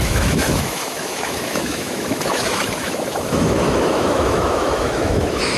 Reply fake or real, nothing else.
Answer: fake